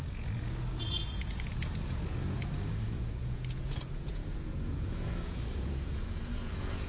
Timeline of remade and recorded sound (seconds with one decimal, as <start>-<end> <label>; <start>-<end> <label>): 0.0-6.9 remade